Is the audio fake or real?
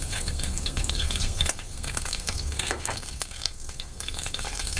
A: fake